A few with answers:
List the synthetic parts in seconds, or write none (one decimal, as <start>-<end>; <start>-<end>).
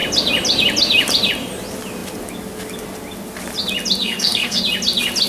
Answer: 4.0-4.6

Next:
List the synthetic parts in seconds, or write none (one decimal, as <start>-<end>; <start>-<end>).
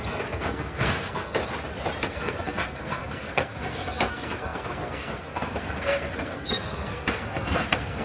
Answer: 0.0-1.4; 2.1-8.0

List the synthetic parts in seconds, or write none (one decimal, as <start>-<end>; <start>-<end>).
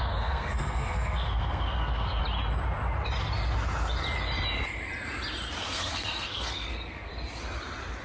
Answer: 0.0-2.2; 5.6-7.1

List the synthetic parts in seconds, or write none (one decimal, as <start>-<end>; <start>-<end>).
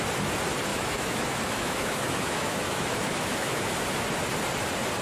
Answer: 0.7-3.7